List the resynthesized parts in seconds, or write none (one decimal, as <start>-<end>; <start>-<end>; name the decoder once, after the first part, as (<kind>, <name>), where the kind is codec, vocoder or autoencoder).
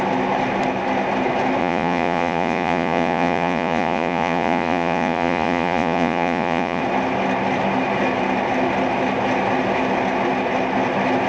1.6-6.8 (vocoder, Vocos)